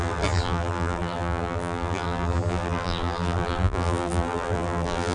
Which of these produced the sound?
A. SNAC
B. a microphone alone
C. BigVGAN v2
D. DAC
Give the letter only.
C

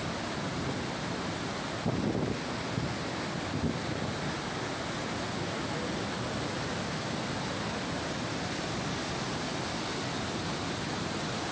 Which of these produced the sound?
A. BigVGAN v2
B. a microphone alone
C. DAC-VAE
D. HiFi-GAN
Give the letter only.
B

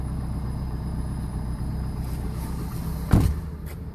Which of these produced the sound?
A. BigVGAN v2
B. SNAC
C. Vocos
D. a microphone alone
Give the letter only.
A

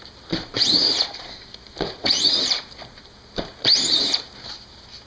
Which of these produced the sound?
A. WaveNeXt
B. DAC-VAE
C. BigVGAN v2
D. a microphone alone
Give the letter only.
C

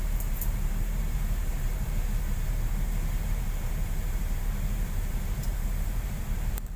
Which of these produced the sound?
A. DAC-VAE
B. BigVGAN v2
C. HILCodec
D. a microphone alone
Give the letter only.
B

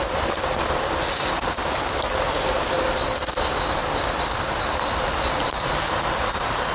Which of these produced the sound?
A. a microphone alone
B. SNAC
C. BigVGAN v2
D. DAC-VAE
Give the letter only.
A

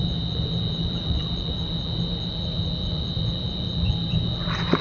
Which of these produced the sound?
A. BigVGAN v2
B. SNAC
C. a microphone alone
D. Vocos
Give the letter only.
A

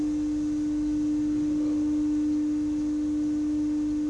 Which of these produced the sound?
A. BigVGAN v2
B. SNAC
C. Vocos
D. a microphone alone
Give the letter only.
D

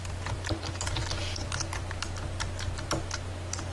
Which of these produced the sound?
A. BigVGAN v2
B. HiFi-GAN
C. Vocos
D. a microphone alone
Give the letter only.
D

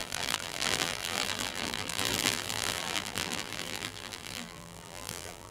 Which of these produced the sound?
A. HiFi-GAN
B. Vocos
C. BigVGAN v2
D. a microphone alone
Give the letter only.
C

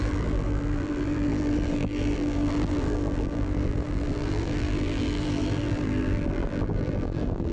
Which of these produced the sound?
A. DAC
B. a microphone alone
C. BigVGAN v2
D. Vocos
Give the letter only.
C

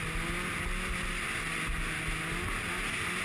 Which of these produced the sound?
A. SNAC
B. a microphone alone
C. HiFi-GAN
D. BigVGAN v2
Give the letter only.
B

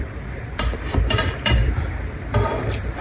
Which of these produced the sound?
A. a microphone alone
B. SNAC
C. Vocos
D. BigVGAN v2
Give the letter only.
D